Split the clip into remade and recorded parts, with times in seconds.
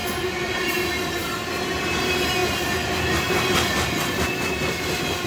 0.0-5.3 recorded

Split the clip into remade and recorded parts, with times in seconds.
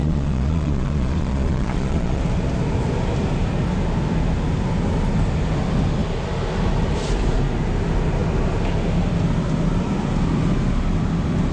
0.0-2.2 remade; 2.2-11.5 recorded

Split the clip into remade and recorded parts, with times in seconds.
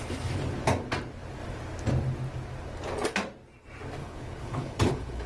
0.0-4.0 recorded; 4.0-5.3 remade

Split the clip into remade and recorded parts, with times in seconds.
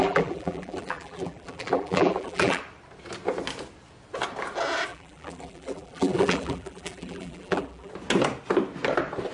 0.0-2.6 remade; 2.6-4.9 recorded; 4.9-7.9 remade; 7.9-9.3 recorded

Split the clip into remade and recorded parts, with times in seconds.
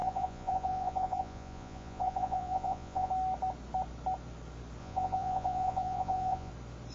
0.0-3.1 remade; 3.1-4.8 recorded; 4.8-6.5 remade; 6.5-6.9 recorded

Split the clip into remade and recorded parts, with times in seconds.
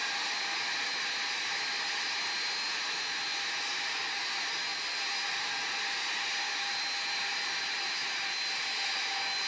0.0-9.5 recorded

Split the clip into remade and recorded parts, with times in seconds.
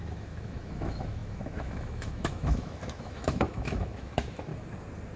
0.0-4.5 remade; 4.5-5.2 recorded